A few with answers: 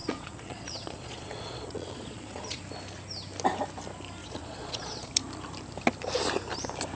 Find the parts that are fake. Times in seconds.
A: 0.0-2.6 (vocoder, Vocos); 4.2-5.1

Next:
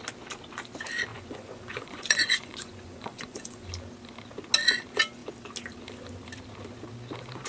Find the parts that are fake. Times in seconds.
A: 1.1-3.7 (vocoder, Vocos)

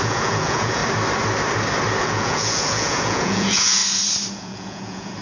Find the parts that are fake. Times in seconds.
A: 0.0-0.8 (vocoder, Vocos); 2.0-3.8; 4.3-5.2

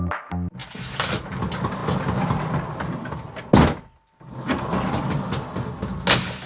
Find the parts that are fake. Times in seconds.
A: none

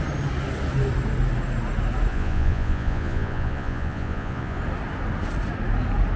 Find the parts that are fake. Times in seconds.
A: 2.1-4.6 (vocoder, Vocos)

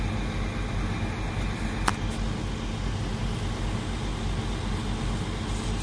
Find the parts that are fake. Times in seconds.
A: none

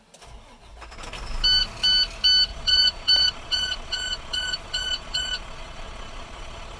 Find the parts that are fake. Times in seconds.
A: 2.5-6.8 (vocoder, Vocos)